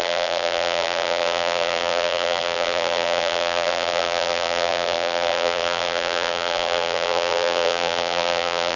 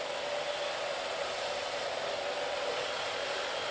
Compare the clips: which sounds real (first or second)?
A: second